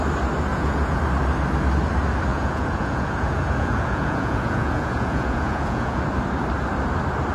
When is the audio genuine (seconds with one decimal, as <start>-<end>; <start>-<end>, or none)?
0.0-0.5; 1.0-2.3; 6.0-7.3